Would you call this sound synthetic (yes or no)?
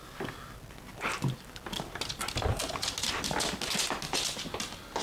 no